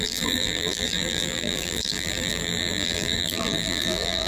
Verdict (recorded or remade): remade